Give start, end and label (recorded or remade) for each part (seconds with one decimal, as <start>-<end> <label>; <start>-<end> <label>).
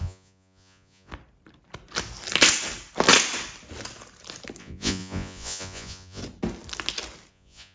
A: 0.0-1.1 remade; 1.1-4.6 recorded; 4.6-6.2 remade; 6.2-7.3 recorded; 7.3-7.7 remade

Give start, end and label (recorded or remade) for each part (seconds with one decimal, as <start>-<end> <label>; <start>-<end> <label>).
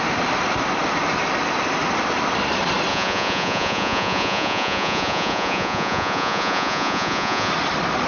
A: 0.0-2.9 recorded; 2.9-7.5 remade; 7.5-8.1 recorded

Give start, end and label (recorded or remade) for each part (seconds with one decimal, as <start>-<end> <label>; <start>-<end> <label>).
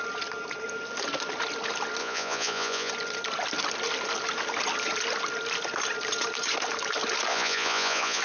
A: 0.0-2.0 recorded; 2.0-2.9 remade; 2.9-7.3 recorded; 7.3-8.2 remade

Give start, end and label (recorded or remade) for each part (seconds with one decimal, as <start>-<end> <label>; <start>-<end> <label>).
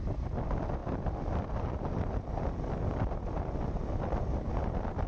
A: 0.0-5.1 recorded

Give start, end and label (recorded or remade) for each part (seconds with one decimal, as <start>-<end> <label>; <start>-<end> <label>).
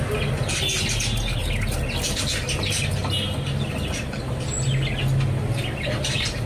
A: 0.0-6.5 recorded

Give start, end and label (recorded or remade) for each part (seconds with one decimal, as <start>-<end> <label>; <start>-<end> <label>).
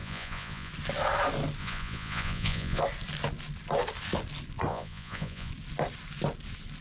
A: 0.0-0.7 remade; 0.7-1.6 recorded; 1.6-2.8 remade; 2.8-4.7 recorded; 4.7-5.5 remade; 5.5-6.8 recorded